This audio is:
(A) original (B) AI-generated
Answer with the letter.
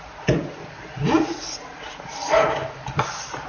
A